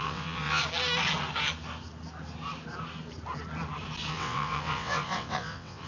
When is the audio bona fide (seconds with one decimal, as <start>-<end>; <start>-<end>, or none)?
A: 0.6-4.1